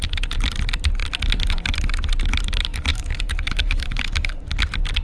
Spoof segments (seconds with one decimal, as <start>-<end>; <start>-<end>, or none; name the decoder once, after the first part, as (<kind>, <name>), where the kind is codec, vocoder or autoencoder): 2.9-4.6 (codec, DAC)